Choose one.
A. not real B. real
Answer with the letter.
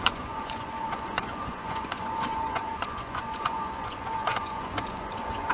A